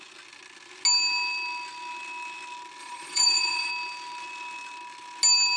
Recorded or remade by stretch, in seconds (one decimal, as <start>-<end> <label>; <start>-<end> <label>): 0.0-2.8 recorded; 2.8-3.7 remade; 3.7-5.6 recorded